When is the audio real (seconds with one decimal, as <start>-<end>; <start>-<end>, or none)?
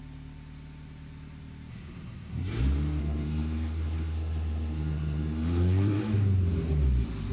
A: 0.0-1.7; 2.6-3.0; 6.0-7.3